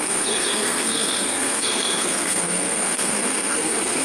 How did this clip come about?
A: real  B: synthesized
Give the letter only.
B